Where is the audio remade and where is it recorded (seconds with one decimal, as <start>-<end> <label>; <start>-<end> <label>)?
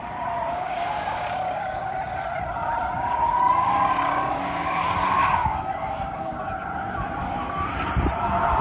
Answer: 0.0-0.5 recorded; 0.5-2.2 remade; 2.2-2.8 recorded; 2.8-4.8 remade; 4.8-5.4 recorded; 5.4-6.4 remade; 6.4-7.2 recorded; 7.2-7.7 remade; 7.7-8.6 recorded